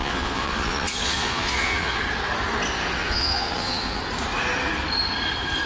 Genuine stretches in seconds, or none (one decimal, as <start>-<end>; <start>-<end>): 2.0-3.0; 4.0-5.7